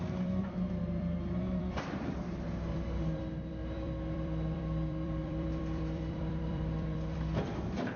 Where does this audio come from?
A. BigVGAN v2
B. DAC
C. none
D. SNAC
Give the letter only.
A